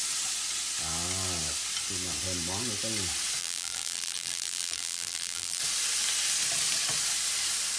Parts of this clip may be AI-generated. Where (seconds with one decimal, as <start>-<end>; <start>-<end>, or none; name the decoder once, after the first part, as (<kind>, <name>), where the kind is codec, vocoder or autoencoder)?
3.4-5.6 (vocoder, BigVGAN v2)

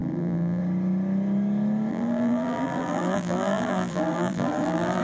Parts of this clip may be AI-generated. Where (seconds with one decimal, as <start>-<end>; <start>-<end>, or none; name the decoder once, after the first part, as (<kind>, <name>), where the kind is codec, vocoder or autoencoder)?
0.0-0.6 (vocoder, BigVGAN v2); 1.9-5.0

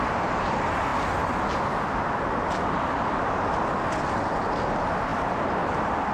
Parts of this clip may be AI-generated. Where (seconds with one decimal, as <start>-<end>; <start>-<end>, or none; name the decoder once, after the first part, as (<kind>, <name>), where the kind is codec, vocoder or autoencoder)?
none

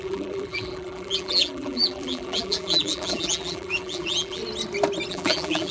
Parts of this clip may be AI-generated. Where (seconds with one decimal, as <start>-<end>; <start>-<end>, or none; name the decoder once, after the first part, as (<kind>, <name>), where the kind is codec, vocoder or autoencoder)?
0.0-4.4 (vocoder, BigVGAN v2); 5.1-5.7

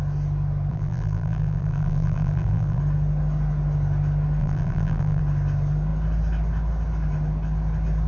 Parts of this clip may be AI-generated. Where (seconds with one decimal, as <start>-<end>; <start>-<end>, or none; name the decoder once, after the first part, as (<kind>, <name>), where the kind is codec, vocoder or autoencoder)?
0.7-2.8 (vocoder, BigVGAN v2); 4.4-5.2

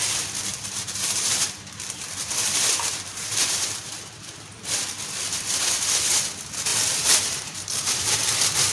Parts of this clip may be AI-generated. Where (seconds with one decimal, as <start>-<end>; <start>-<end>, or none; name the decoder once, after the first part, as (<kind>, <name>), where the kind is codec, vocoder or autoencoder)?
0.5-4.6 (vocoder, BigVGAN v2); 6.7-8.2

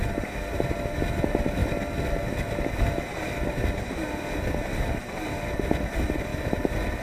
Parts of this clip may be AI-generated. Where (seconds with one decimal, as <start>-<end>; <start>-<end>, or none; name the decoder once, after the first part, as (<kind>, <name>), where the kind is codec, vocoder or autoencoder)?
6.3-7.0 (vocoder, BigVGAN v2)